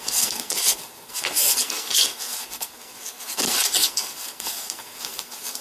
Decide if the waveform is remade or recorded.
remade